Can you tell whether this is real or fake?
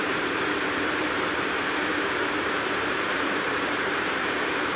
fake